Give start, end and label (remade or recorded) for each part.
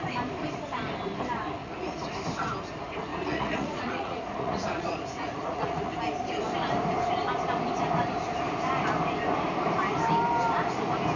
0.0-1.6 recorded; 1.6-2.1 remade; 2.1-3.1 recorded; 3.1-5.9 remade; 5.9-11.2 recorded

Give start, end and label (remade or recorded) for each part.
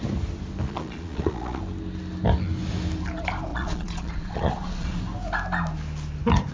0.0-0.6 recorded; 0.6-1.6 remade; 1.6-3.5 recorded; 3.5-5.0 remade; 5.0-6.5 recorded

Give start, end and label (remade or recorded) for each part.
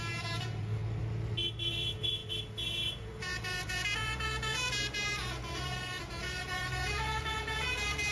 0.0-0.8 remade; 0.8-1.7 recorded; 1.7-8.1 remade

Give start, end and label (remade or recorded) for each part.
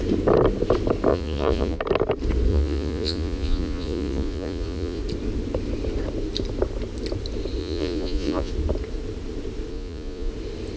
0.0-1.1 recorded; 1.1-1.8 remade; 1.8-2.5 recorded; 2.5-5.0 remade; 5.0-7.6 recorded; 7.6-8.5 remade; 8.5-9.7 recorded; 9.7-10.3 remade; 10.3-10.8 recorded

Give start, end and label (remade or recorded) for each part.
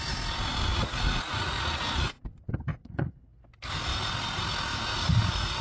0.0-0.7 recorded; 0.7-2.2 remade; 2.2-2.7 recorded; 2.7-3.2 remade; 3.2-4.9 recorded; 4.9-5.6 remade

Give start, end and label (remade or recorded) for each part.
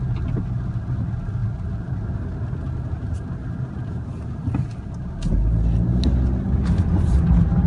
0.0-7.7 recorded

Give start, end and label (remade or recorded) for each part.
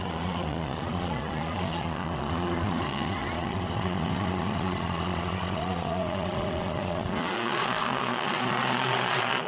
0.0-9.5 remade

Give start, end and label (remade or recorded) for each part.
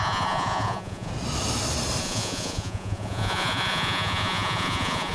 0.0-1.1 remade; 1.1-2.0 recorded; 2.0-5.1 remade